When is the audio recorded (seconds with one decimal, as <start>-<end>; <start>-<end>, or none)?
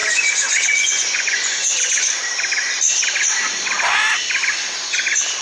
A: 2.1-5.4